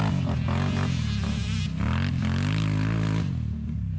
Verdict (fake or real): real